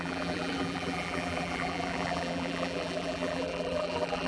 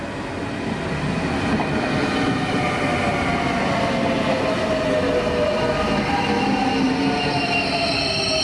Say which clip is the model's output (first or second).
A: first